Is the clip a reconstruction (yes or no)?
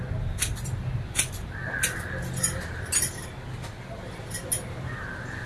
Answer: no